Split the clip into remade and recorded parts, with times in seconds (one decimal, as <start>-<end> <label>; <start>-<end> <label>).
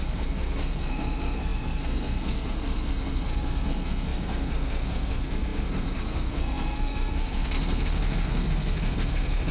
0.0-9.5 remade